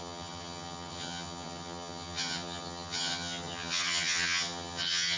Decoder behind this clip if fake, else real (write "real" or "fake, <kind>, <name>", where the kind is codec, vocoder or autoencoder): fake, vocoder, HiFi-GAN